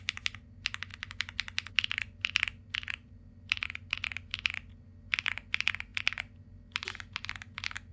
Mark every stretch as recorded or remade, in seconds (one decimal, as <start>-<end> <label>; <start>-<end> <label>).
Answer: 0.0-7.9 recorded